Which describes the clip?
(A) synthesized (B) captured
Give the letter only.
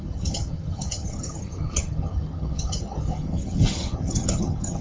A